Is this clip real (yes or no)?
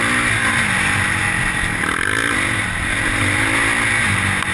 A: yes